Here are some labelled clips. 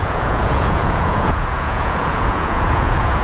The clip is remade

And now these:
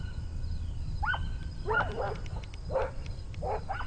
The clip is recorded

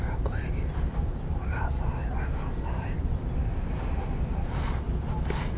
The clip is recorded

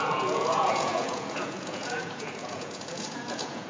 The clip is remade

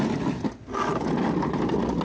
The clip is recorded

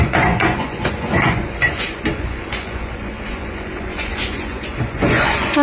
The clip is remade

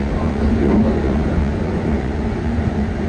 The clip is remade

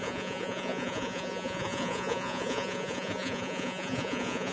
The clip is remade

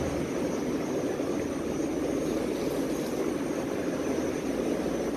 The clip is recorded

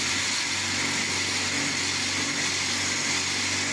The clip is recorded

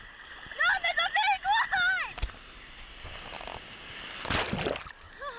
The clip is recorded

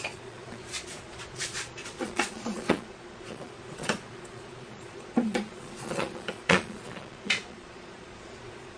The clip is remade